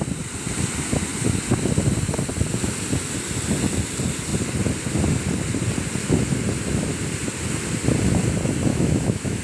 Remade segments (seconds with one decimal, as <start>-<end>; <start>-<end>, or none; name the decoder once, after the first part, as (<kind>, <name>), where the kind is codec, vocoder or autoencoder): 8.7-9.4 (autoencoder, DAC-VAE)